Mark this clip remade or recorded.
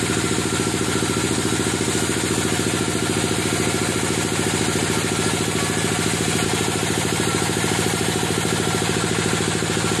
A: recorded